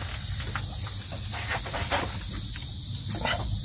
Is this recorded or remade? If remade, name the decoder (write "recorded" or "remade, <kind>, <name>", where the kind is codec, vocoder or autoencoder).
recorded